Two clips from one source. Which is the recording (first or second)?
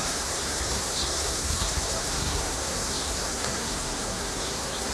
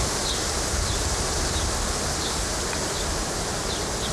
second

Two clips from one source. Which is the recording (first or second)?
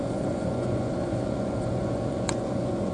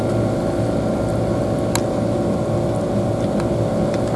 second